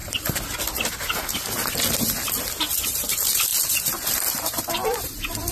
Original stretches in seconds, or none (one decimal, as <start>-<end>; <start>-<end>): 0.0-2.4; 3.5-4.7